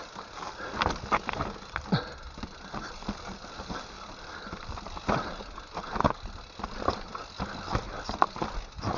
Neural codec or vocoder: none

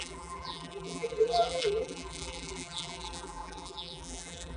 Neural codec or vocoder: vocoder, BigVGAN v2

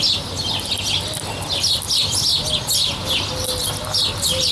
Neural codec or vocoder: none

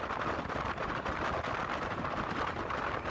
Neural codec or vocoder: none